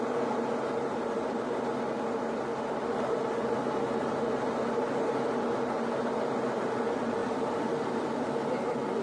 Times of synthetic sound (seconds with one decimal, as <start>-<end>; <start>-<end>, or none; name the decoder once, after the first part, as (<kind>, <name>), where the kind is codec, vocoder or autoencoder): 2.5-4.2 (vocoder, BigVGAN v2); 7.2-8.3